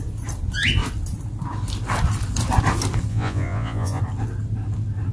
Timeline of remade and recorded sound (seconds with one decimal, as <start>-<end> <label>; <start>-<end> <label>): 0.0-3.1 recorded; 3.1-4.0 remade; 4.0-5.1 recorded